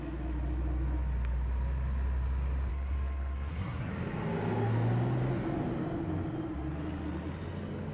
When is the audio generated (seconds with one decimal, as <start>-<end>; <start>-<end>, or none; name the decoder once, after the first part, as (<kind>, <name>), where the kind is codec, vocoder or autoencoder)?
2.7-3.9 (codec, SNAC)